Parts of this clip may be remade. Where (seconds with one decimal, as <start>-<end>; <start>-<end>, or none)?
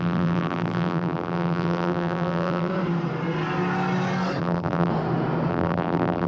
0.0-2.7; 4.4-4.9; 5.5-6.3